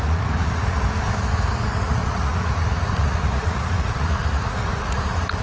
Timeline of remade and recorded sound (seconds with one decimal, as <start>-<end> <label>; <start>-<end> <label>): 0.0-0.6 remade; 0.6-1.8 recorded; 1.8-5.4 remade